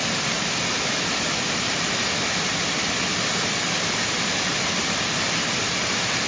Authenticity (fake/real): real